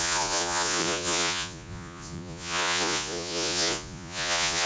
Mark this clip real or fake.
fake